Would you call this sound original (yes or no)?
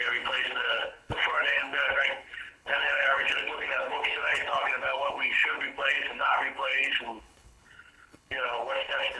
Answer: no